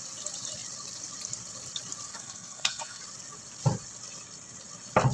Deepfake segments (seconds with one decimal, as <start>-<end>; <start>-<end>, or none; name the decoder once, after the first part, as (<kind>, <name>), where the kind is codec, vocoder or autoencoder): 2.1-3.0 (codec, SNAC)